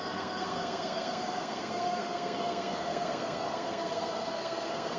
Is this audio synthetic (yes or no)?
yes